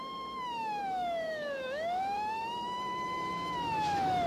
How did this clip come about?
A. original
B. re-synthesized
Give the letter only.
B